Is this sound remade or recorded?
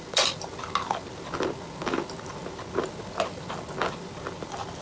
recorded